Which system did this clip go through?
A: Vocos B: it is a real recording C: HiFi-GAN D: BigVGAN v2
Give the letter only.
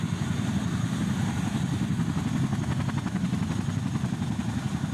B